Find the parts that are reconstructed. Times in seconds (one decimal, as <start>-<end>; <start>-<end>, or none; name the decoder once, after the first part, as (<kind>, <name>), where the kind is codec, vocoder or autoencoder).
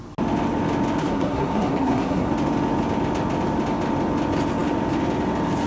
1.0-2.3 (codec, SNAC)